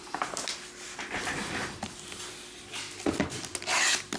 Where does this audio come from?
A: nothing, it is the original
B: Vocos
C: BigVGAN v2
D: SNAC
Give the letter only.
A